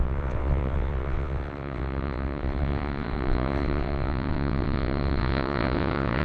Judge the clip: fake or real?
fake